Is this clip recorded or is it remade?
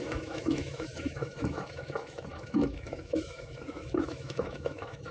remade